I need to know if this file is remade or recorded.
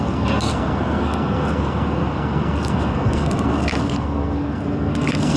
remade